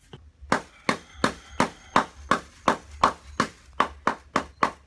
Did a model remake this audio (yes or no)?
no